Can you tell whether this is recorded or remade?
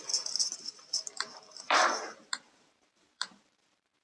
remade